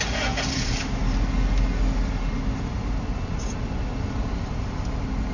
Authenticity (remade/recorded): recorded